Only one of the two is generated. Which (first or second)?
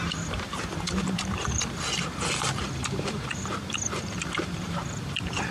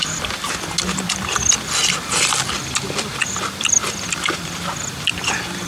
first